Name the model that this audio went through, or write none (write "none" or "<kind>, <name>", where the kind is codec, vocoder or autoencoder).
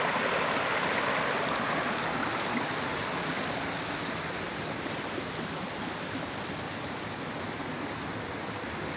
none